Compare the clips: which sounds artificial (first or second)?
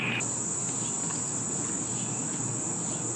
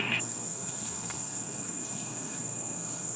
second